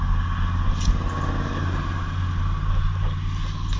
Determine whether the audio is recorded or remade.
recorded